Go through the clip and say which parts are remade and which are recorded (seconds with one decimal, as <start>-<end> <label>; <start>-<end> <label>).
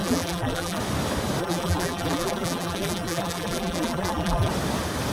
0.0-0.8 remade; 0.8-1.4 recorded; 1.4-4.5 remade; 4.5-5.1 recorded